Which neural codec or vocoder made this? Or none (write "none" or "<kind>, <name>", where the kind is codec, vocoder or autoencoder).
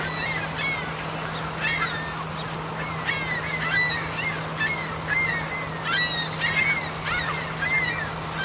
none